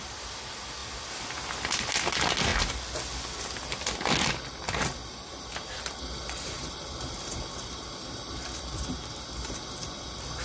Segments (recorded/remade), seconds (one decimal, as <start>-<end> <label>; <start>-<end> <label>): 0.0-10.4 recorded